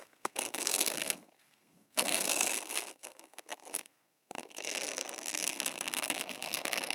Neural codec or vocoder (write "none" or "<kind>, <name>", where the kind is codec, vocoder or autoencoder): codec, SNAC